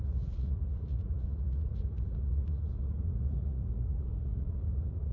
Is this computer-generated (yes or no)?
yes